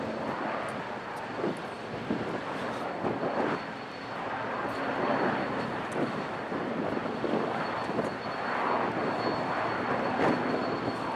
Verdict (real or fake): real